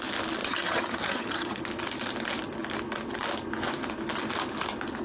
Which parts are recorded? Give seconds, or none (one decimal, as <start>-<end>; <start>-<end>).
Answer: 0.0-0.4; 1.6-5.0